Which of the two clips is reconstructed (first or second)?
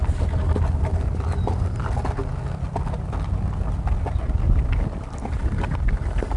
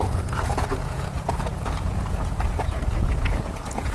second